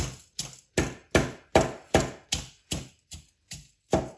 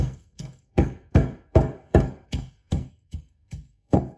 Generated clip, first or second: second